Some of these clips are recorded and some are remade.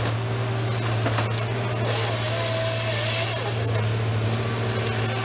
recorded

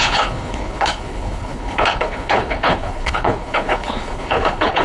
remade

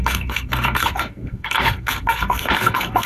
remade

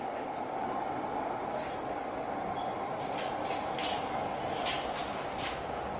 recorded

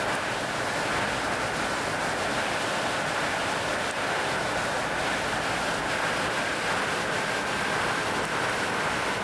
recorded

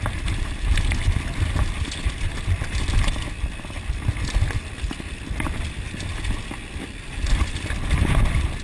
recorded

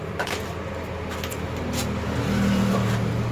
recorded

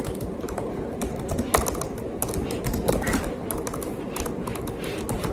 recorded